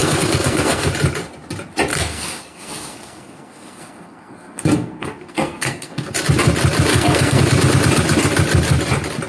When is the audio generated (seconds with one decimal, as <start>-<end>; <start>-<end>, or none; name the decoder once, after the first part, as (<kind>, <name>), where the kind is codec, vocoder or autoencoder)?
0.0-0.9 (codec, SNAC); 1.9-6.1; 6.9-7.4